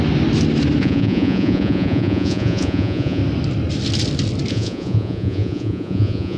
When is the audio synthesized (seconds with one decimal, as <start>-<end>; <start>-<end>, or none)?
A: 0.8-3.2; 4.5-6.4